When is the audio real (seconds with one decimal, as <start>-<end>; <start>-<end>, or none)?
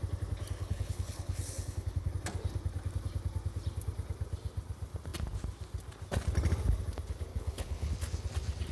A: 0.0-0.6; 2.1-7.3; 7.9-8.7